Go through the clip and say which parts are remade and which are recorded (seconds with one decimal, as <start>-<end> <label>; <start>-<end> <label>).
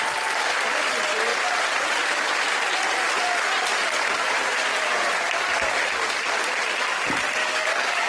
0.0-7.4 recorded; 7.4-8.1 remade